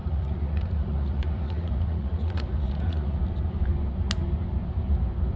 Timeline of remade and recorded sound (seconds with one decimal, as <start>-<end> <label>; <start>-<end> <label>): 0.0-3.2 remade; 3.2-5.4 recorded